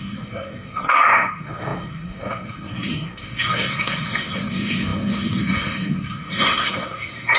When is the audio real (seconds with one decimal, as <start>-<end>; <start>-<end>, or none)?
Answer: none